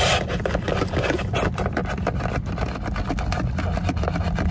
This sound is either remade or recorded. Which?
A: recorded